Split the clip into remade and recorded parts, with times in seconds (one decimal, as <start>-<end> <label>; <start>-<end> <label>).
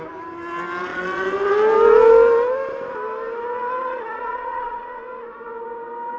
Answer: 0.0-0.9 recorded; 0.9-1.5 remade; 1.5-3.8 recorded; 3.8-5.0 remade; 5.0-6.2 recorded